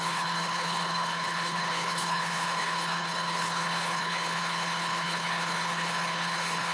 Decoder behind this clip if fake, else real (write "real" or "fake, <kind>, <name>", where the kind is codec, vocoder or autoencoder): fake, codec, HILCodec